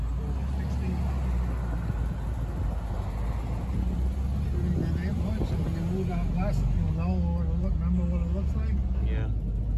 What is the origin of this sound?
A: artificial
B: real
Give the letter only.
B